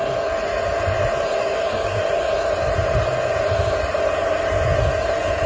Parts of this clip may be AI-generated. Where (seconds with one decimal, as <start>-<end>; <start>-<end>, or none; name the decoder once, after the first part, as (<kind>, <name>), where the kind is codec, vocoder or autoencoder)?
1.4-2.0 (codec, DAC)